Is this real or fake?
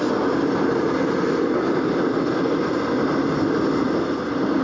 fake